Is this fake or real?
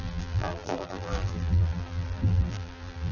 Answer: fake